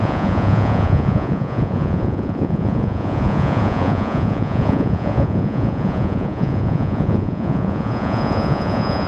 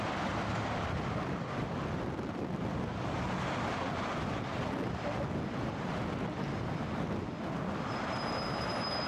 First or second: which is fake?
first